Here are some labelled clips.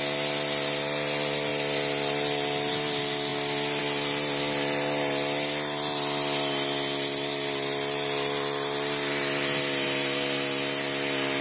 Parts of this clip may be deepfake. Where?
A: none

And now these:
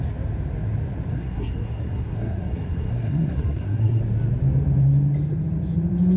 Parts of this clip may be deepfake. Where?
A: 1.1-4.0

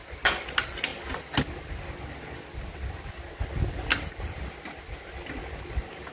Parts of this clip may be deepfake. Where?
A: none

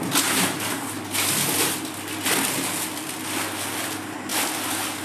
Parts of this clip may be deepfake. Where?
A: none

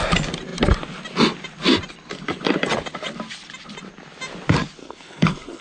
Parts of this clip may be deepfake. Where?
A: 4.8-5.6

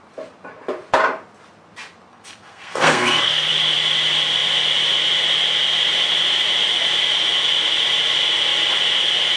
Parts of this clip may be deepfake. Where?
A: 2.1-3.5

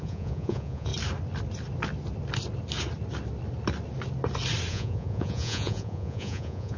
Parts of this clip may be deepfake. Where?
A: 0.0-0.9; 4.7-6.8